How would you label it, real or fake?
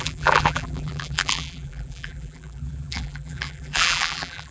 fake